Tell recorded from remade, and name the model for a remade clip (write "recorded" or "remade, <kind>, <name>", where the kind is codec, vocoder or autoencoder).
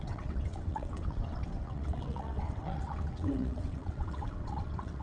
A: remade, vocoder, WaveNeXt